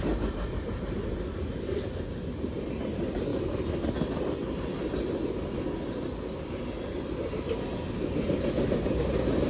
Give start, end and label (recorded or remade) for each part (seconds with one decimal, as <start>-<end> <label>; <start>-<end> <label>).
0.0-9.5 recorded